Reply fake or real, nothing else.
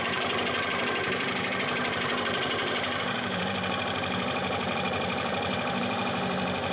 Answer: fake